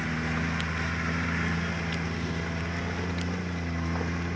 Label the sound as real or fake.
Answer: real